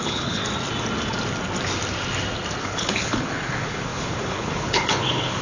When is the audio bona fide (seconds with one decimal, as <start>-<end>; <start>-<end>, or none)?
0.4-2.6